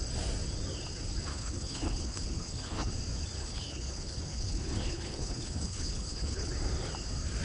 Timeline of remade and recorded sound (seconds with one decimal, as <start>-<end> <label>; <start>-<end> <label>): 0.0-1.3 recorded; 1.3-2.9 remade; 2.9-3.4 recorded; 3.4-6.5 remade; 6.5-7.4 recorded